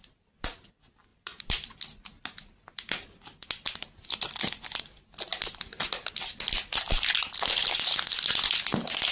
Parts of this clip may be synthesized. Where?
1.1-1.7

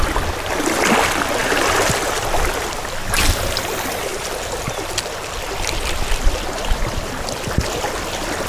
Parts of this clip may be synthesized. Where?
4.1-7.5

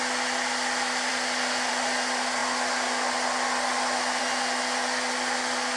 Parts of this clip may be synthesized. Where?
none

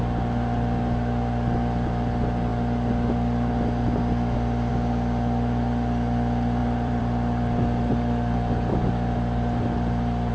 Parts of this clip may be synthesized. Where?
6.6-10.3

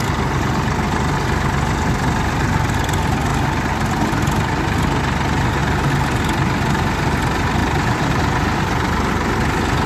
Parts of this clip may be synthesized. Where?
7.6-8.2

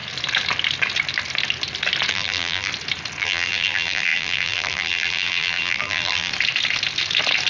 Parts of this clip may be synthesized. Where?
2.1-2.7; 3.2-6.3

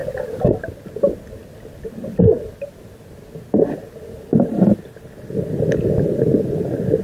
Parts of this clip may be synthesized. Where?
1.4-2.7

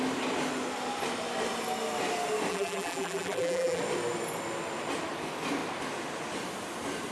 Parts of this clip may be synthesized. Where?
2.5-3.8